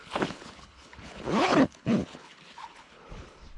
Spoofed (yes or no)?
yes